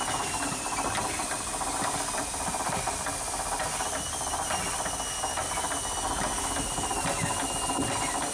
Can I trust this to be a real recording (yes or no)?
no